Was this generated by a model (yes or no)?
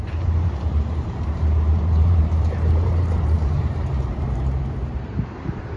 yes